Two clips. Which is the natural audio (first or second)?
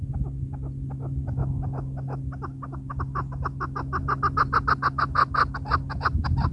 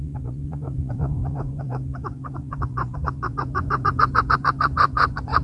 first